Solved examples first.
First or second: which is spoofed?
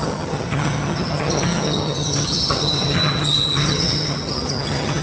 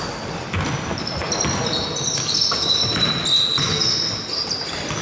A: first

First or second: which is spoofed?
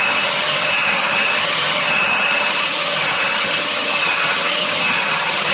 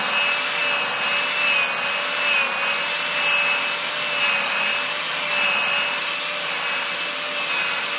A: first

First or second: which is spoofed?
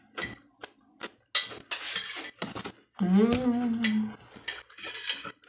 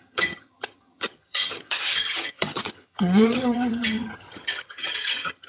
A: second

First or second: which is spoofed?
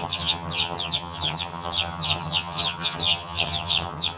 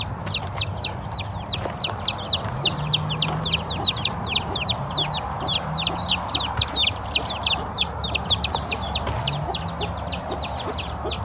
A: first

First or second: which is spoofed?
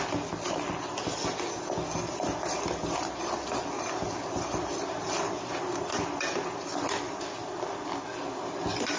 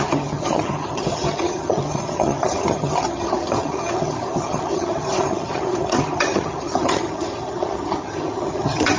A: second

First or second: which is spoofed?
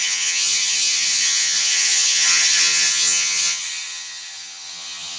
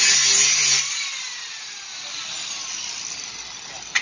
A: first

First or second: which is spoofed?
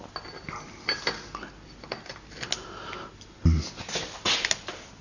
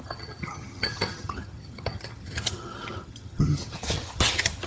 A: second